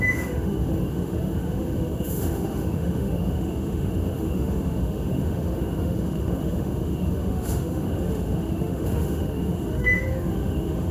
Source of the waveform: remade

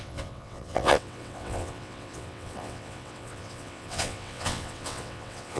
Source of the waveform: remade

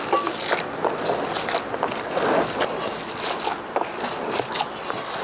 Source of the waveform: recorded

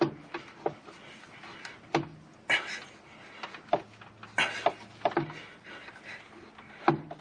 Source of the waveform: recorded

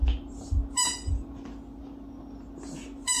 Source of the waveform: recorded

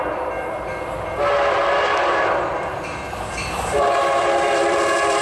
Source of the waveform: remade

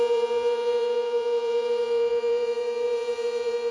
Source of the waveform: remade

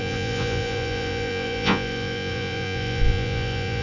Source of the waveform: remade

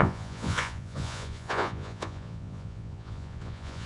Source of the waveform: remade